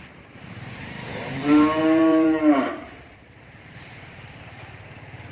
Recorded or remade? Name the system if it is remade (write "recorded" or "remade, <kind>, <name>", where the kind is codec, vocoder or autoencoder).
remade, vocoder, BigVGAN v2